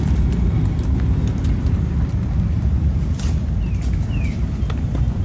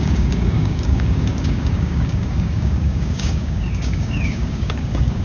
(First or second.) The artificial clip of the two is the second